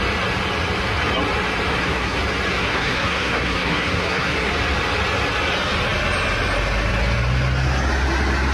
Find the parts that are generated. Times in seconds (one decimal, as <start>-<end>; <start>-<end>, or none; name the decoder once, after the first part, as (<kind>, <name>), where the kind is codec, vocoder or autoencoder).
1.7-2.2 (codec, SNAC); 2.6-4.5